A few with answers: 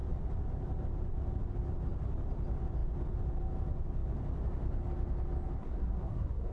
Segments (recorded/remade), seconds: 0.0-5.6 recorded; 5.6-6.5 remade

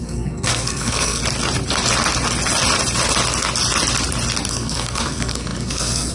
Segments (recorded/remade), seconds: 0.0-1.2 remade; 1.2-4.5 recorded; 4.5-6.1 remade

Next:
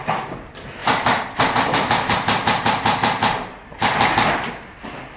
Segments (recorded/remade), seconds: 0.0-0.8 recorded; 0.8-3.9 remade; 3.9-5.2 recorded

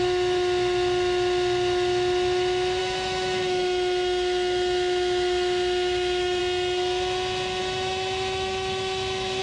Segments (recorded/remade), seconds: 0.0-2.8 recorded; 2.8-6.4 remade; 6.4-7.6 recorded; 7.6-9.4 remade

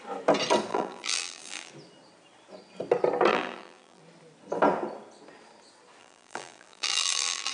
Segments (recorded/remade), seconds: 0.0-0.7 recorded; 0.7-1.7 remade; 1.7-3.3 recorded; 3.3-4.0 remade; 4.0-6.0 recorded; 6.0-7.5 remade

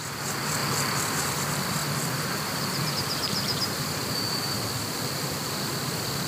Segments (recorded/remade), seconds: 0.0-0.6 remade; 0.6-1.1 recorded; 1.1-4.0 remade; 4.0-4.8 recorded; 4.8-6.3 remade

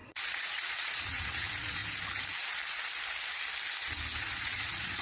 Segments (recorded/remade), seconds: 0.0-1.8 remade; 1.8-4.2 recorded; 4.2-5.0 remade